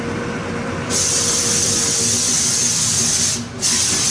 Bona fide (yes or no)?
yes